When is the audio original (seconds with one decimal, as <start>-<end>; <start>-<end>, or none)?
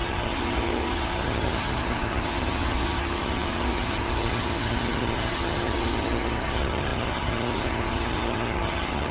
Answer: none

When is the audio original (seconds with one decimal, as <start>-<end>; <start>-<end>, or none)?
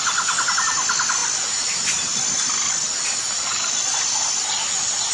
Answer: 0.0-5.1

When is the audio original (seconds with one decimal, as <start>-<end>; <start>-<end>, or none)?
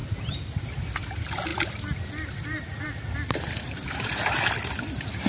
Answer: 0.0-5.3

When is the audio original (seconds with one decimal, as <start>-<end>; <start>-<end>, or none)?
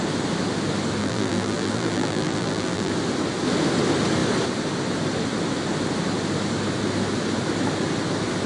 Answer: 0.0-1.0; 2.9-8.5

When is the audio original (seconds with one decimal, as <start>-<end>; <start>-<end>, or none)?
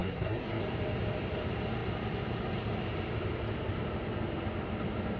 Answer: 0.6-5.2